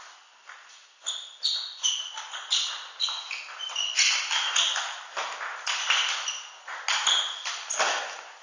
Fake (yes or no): no